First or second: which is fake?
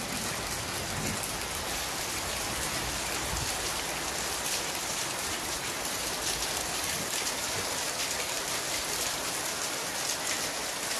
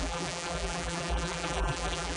second